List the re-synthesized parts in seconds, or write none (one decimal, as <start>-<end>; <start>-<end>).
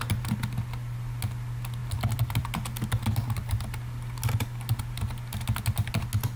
none